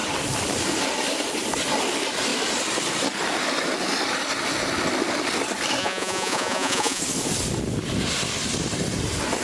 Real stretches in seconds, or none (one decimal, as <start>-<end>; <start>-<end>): 0.0-5.8; 7.0-9.4